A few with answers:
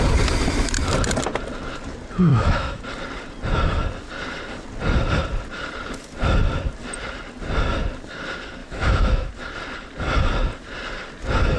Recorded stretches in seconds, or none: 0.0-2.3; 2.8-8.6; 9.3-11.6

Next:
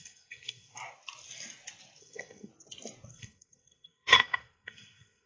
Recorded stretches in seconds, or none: 0.8-2.0; 2.5-3.1

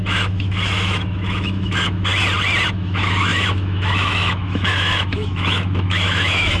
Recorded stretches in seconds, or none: 2.1-2.7

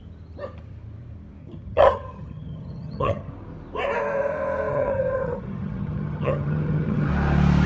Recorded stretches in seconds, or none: 0.0-1.4; 3.3-4.7; 7.1-7.7

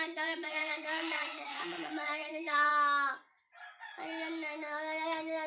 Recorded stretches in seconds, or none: 2.7-5.5

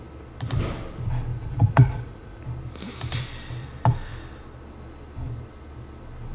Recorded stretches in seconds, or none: 0.0-1.3; 2.4-6.3

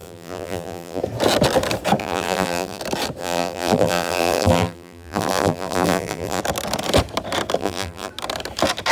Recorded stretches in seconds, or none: 1.0-2.0; 2.8-3.2; 6.4-7.6; 8.1-8.9